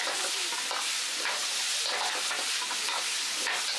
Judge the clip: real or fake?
real